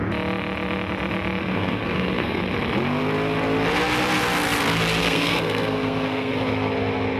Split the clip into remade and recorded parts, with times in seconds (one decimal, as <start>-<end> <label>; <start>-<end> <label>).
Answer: 0.0-1.4 recorded; 1.4-2.4 remade; 2.4-5.0 recorded; 5.0-6.3 remade; 6.3-7.2 recorded